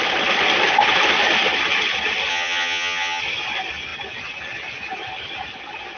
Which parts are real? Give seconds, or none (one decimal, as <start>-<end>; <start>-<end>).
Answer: 0.0-2.3; 3.2-6.0